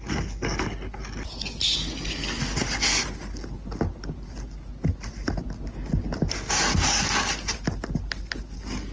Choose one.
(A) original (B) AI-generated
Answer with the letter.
A